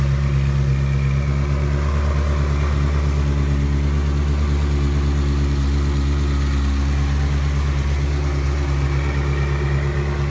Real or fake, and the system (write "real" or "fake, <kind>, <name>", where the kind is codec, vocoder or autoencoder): real